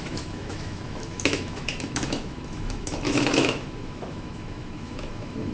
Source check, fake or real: fake